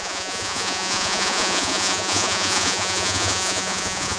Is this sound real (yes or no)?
no